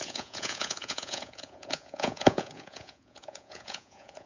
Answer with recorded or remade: remade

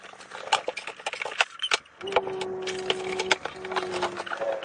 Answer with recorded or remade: recorded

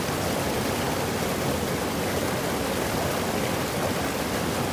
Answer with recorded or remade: recorded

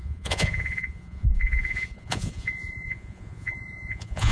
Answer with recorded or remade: remade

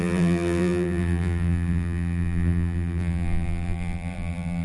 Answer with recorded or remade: remade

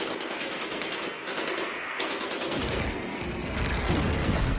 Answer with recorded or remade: remade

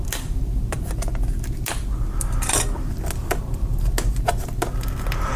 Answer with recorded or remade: recorded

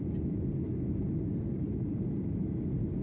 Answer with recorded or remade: recorded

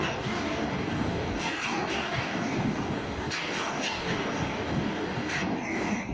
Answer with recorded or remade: remade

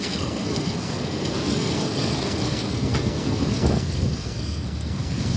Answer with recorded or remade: remade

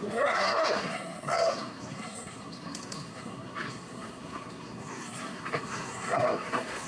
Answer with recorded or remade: remade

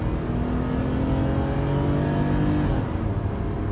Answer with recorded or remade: recorded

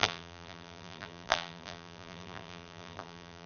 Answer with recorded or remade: remade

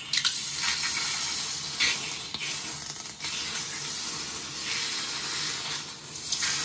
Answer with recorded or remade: recorded